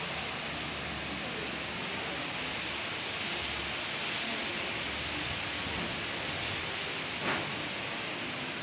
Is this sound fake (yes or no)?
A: no